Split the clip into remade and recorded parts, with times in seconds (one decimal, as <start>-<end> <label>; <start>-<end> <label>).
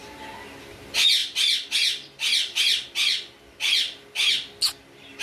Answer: 0.0-5.2 recorded